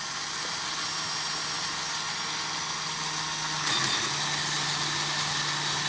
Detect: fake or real real